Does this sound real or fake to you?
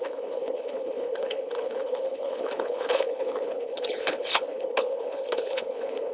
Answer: fake